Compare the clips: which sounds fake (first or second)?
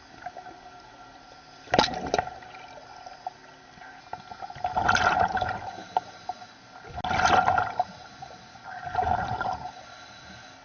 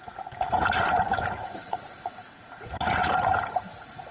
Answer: second